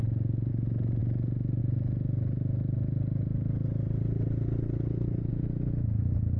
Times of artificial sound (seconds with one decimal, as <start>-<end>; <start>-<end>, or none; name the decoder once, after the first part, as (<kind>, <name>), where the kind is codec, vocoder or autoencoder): none